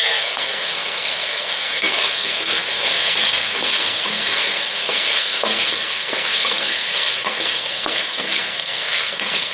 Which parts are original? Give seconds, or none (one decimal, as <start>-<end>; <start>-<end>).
none